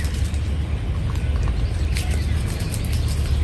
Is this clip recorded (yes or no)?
yes